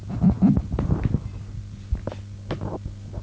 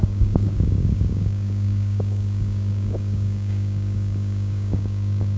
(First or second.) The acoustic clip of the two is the first